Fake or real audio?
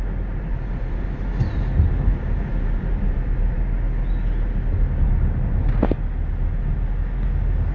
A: real